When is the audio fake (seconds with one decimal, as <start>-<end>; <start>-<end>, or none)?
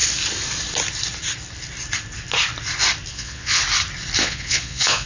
3.1-3.6; 4.2-5.1